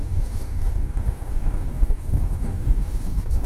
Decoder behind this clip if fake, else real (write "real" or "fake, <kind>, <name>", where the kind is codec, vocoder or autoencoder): fake, codec, DAC